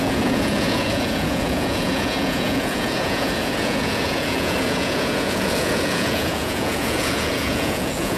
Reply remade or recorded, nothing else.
remade